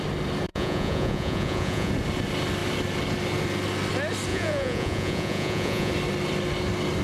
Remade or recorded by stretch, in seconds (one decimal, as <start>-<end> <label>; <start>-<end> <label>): 0.0-0.5 recorded; 0.5-1.9 remade; 1.9-4.3 recorded; 4.3-5.9 remade; 5.9-7.0 recorded